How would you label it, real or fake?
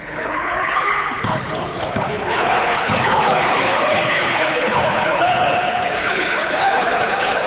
fake